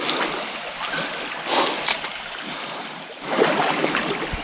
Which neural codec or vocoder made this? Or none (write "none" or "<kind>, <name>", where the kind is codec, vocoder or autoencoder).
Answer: none